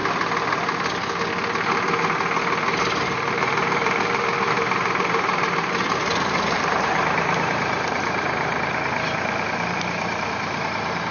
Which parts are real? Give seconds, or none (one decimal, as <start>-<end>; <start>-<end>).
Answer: 0.0-2.8